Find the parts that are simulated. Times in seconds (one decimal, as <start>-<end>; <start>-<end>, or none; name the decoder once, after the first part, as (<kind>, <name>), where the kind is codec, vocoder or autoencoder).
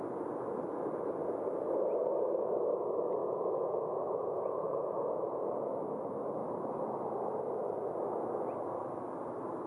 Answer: 3.2-5.7 (vocoder, Vocos)